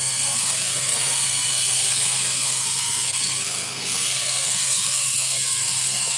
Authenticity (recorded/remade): remade